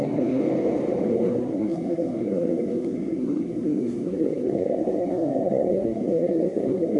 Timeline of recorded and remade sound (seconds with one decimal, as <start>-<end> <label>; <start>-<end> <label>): 0.0-0.4 remade; 0.4-1.1 recorded; 1.1-7.0 remade